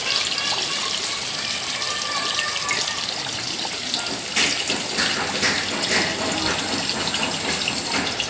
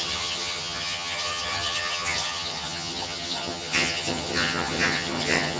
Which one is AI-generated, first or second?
second